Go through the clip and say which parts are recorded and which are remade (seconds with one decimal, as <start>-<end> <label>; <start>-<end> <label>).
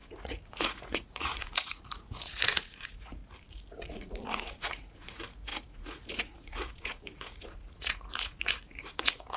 0.0-3.2 remade; 3.2-3.7 recorded; 3.7-9.4 remade